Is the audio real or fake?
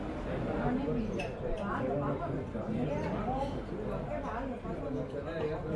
real